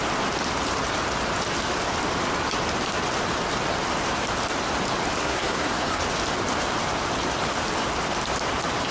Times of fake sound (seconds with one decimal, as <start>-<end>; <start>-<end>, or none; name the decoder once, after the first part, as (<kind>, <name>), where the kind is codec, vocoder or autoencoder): 5.2-6.0 (codec, SNAC)